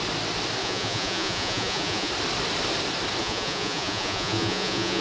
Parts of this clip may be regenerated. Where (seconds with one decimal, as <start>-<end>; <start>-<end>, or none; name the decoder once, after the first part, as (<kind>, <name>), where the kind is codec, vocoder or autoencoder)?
0.6-2.1 (vocoder, Vocos); 3.2-5.0